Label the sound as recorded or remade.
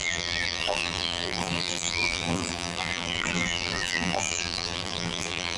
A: remade